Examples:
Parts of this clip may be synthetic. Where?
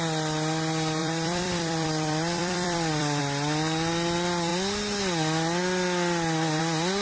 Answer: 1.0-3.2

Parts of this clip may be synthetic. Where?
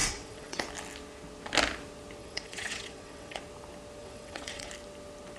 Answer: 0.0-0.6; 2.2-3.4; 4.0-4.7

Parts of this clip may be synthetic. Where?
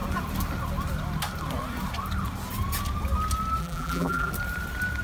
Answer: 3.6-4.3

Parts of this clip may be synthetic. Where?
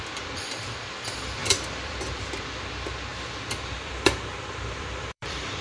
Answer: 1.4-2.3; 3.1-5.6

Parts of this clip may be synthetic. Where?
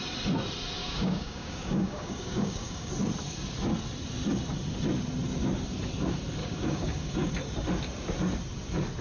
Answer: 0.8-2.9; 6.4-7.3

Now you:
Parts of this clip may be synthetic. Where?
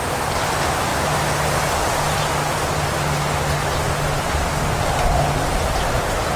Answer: none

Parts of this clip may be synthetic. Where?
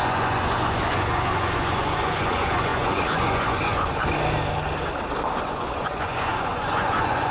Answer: 0.0-4.0; 5.4-7.3